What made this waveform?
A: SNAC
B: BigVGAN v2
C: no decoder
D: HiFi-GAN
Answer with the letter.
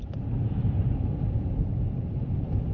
B